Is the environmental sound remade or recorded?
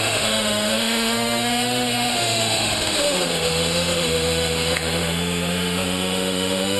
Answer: remade